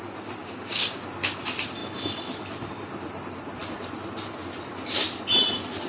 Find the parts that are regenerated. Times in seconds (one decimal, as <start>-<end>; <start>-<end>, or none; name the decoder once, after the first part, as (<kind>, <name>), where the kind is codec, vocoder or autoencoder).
0.4-1.0 (codec, DAC)